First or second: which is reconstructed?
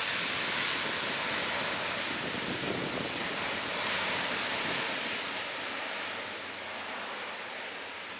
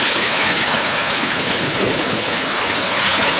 second